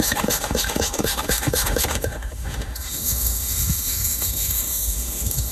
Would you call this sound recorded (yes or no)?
no